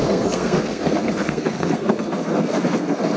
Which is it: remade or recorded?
remade